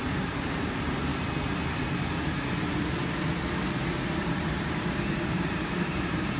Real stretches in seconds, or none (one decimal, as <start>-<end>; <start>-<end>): 1.1-3.9

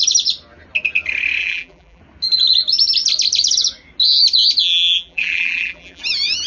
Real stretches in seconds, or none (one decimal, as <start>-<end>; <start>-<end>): 0.0-1.4; 2.0-4.6; 6.0-6.5

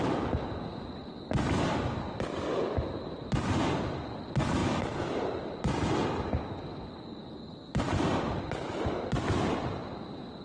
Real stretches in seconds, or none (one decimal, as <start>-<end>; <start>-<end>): 0.0-9.8

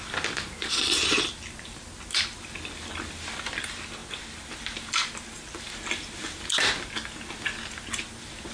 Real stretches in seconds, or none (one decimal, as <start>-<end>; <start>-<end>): 0.0-0.8; 1.8-8.5

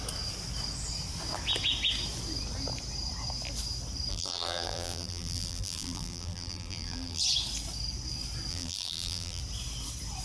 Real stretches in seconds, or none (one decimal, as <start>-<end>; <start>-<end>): 0.0-4.1; 7.2-8.5; 9.4-10.2